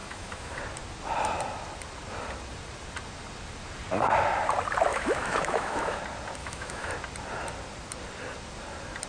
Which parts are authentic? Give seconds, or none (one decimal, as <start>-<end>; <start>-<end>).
0.6-4.9; 6.0-6.4; 6.9-9.1